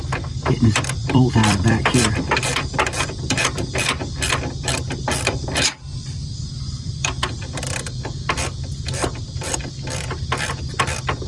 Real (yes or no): no